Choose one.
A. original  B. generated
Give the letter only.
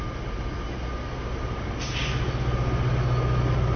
A